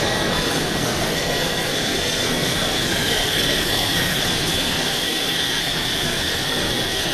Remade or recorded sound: remade